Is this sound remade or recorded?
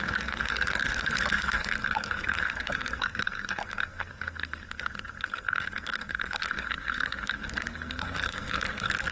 remade